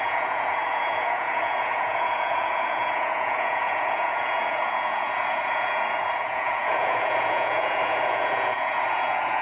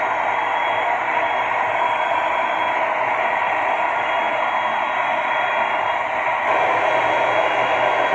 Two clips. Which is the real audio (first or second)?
second